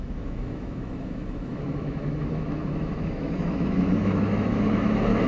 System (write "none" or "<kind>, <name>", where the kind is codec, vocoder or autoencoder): autoencoder, DAC-VAE